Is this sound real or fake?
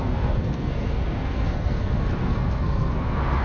fake